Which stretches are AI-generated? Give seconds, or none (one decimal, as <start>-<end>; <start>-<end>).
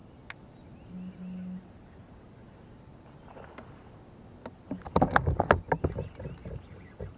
none